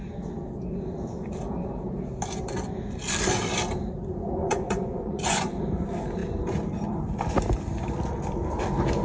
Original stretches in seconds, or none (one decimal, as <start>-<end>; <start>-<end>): 0.0-4.4; 5.6-9.0